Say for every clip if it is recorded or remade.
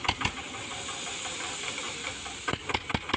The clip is recorded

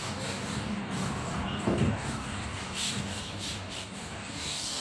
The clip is remade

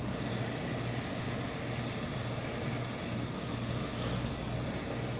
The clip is recorded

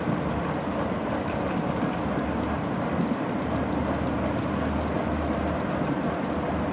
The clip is remade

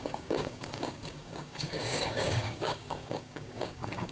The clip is remade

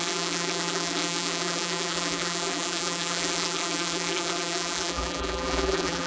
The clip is remade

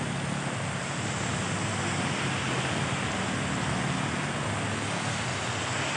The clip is recorded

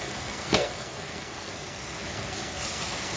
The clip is remade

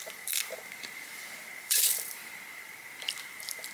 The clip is remade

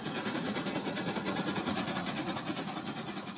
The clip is remade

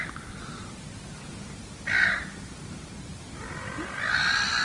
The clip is recorded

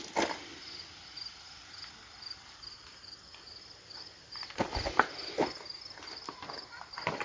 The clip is recorded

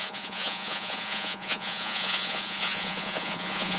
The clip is remade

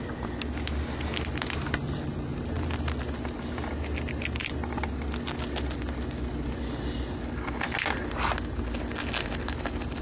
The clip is recorded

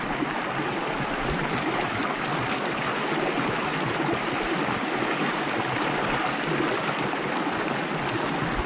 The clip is recorded